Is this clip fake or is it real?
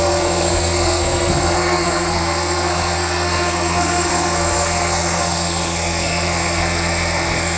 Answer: fake